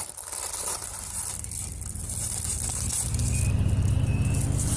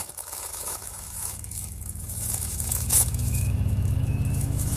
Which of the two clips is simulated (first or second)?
second